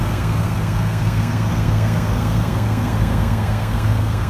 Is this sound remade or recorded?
remade